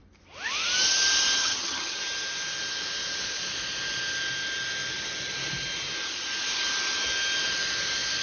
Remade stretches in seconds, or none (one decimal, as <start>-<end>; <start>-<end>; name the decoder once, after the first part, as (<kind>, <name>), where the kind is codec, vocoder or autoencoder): 1.4-2.0 (vocoder, HiFi-GAN)